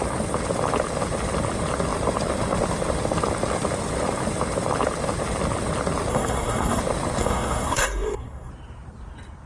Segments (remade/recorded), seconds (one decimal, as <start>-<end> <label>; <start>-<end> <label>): 0.0-6.1 recorded; 6.1-6.8 remade; 6.8-7.2 recorded; 7.2-8.5 remade; 8.5-9.5 recorded